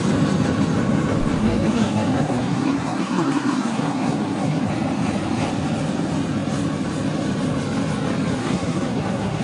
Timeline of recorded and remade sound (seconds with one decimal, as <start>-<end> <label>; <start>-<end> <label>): 0.0-1.4 recorded; 1.4-4.7 remade; 4.7-8.4 recorded; 8.4-9.4 remade